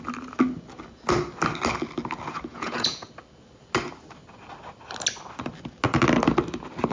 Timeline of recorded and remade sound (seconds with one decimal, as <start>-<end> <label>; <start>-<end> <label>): 0.0-2.5 recorded; 2.5-3.1 remade; 3.1-6.9 recorded